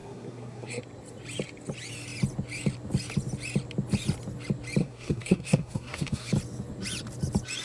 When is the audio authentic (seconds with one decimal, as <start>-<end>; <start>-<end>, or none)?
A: 0.8-4.8; 6.3-7.6

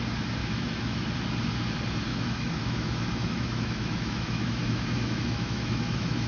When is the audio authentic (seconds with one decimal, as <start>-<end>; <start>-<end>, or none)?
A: 0.0-0.4; 1.1-2.1

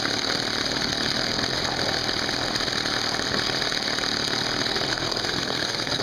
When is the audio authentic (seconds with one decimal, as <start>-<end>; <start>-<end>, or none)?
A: 0.0-4.9

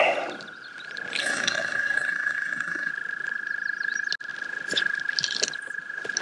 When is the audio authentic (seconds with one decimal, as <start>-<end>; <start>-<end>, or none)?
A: 0.0-1.2; 2.9-6.2

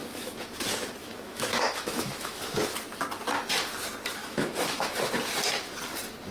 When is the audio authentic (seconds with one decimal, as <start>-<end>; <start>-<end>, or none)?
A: 0.6-1.0; 2.4-4.2; 5.1-6.3

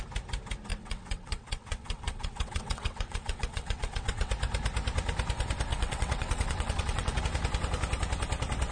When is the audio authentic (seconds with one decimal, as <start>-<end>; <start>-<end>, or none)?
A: 0.0-0.7; 4.3-5.7; 7.2-8.7

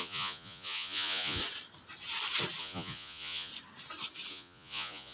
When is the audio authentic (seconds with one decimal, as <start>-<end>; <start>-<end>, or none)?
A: 1.4-2.6; 3.5-4.3

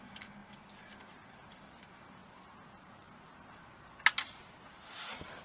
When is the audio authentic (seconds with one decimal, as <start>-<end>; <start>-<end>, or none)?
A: 0.0-5.4